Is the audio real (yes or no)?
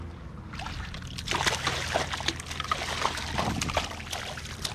yes